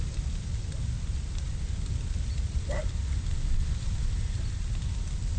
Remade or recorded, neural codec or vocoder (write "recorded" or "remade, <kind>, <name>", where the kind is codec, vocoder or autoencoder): recorded